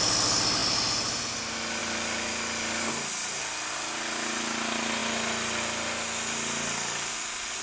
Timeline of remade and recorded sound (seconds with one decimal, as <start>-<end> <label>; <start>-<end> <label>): 0.0-7.6 recorded